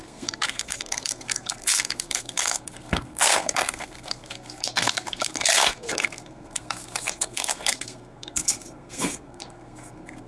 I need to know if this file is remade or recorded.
remade